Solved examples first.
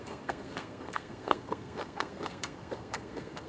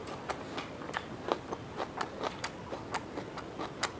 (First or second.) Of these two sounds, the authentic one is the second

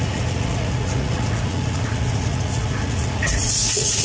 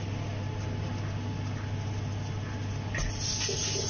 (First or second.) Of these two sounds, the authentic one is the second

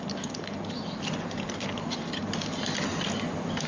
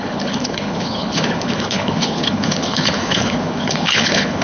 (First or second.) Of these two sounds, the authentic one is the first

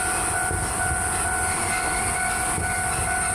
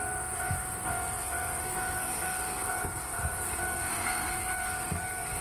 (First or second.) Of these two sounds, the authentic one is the first